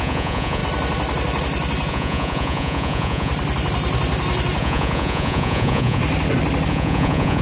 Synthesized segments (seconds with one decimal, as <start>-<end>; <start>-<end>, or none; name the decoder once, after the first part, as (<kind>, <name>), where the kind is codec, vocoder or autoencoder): 0.0-0.6 (vocoder, Vocos); 1.9-3.3; 4.6-6.0; 6.7-7.4